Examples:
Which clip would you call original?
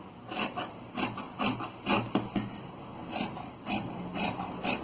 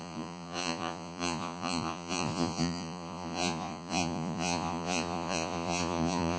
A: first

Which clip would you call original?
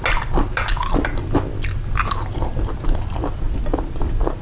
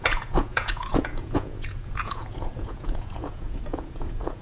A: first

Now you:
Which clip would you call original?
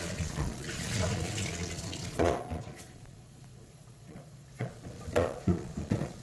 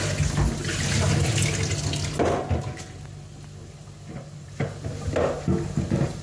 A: second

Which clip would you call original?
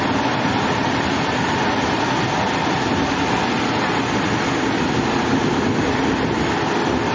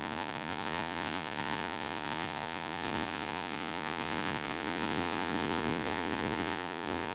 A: first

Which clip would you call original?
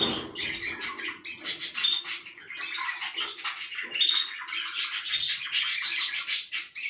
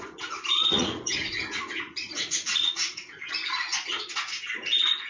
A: first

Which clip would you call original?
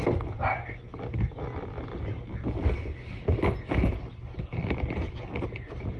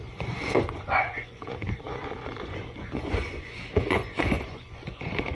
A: first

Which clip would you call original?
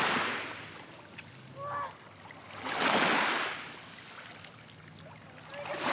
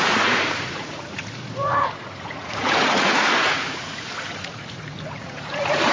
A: first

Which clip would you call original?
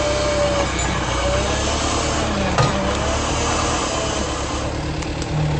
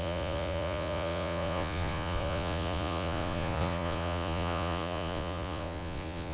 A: first